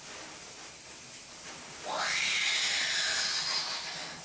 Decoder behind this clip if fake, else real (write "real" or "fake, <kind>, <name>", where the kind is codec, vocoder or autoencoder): real